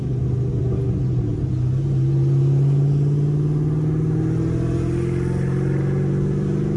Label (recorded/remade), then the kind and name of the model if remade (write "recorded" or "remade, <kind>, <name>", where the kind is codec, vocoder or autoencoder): recorded